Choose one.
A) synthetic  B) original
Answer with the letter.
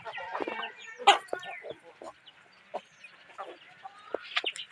B